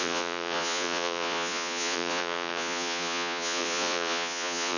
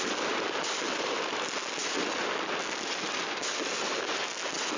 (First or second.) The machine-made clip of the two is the first